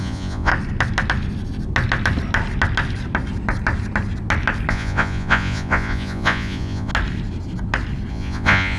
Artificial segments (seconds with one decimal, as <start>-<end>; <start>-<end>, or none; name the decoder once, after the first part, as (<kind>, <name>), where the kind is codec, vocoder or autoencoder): 0.0-0.5 (vocoder, Vocos); 4.7-6.9; 8.1-8.8